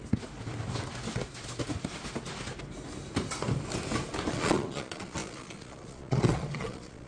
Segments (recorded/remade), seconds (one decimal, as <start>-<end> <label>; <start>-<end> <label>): 0.0-4.3 recorded; 4.3-7.1 remade